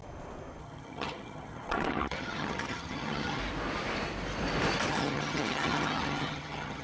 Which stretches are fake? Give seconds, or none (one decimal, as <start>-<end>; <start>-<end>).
0.6-3.4; 4.9-6.8